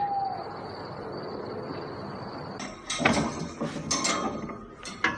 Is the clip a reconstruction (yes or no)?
no